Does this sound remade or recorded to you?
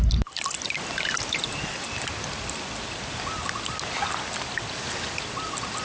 recorded